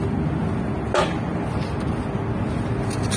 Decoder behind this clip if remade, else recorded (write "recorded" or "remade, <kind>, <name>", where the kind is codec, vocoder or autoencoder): recorded